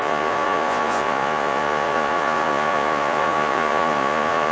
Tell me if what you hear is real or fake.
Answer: fake